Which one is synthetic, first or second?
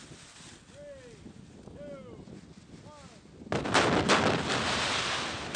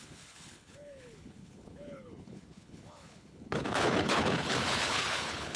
second